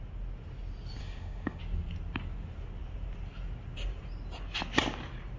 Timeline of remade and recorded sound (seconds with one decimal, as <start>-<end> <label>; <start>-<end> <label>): 0.0-1.0 recorded; 1.0-1.6 remade; 1.6-5.4 recorded